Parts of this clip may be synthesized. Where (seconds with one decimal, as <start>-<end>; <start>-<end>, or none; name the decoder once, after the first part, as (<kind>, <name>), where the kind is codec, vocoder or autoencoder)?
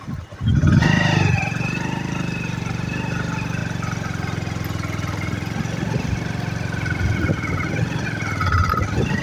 none